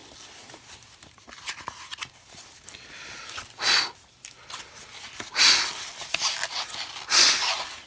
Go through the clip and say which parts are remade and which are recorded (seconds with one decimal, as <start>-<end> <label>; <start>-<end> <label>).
0.0-7.9 recorded